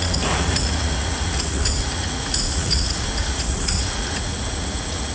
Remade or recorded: remade